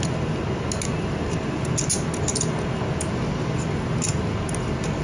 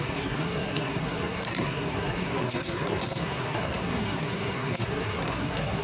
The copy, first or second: second